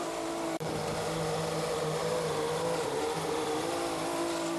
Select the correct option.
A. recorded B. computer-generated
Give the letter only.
A